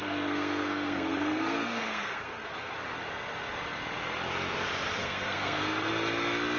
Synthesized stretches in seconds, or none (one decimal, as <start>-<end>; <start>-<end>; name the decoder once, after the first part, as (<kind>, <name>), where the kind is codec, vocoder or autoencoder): 0.0-2.7 (codec, SNAC); 5.0-5.9